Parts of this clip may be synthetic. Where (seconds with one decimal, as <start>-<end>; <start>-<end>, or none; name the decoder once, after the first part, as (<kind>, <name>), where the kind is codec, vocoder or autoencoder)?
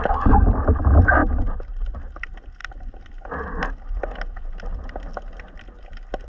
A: none